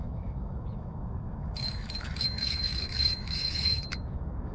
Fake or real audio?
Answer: fake